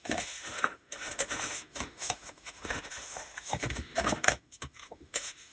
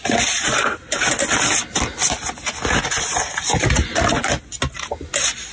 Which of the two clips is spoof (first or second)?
first